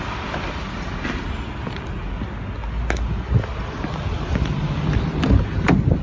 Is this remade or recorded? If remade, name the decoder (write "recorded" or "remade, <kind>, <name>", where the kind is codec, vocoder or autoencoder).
recorded